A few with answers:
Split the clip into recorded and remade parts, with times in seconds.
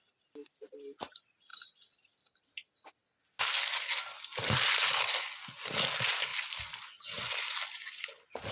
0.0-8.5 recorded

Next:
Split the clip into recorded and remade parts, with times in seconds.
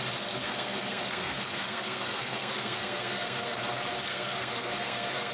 0.0-0.4 recorded; 0.4-3.6 remade; 3.6-4.1 recorded; 4.1-5.3 remade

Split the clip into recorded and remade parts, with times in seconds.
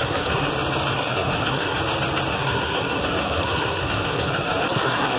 0.0-0.5 remade; 0.5-0.9 recorded; 0.9-1.8 remade; 1.8-2.3 recorded; 2.3-5.2 remade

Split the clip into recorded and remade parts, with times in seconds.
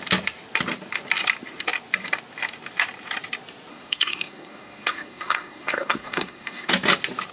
0.0-3.7 recorded; 3.7-6.7 remade; 6.7-7.3 recorded